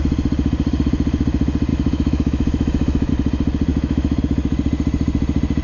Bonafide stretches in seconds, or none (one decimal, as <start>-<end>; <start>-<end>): 0.0-1.7; 3.1-3.7; 4.2-5.6